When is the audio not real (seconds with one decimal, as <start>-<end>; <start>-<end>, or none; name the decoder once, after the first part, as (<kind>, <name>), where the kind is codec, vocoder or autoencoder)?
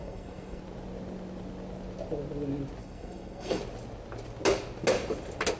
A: 0.0-0.6 (codec, SNAC); 2.8-3.6